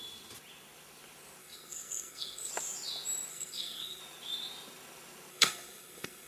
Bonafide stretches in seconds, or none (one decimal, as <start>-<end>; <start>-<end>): 0.0-1.4; 2.5-3.3; 4.0-5.3